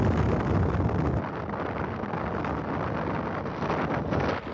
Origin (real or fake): real